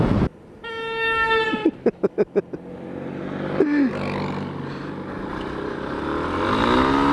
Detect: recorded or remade recorded